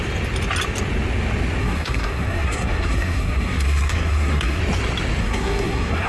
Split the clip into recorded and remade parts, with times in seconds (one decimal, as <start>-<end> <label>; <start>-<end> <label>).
0.0-1.6 recorded; 1.6-4.6 remade; 4.6-5.2 recorded; 5.2-6.1 remade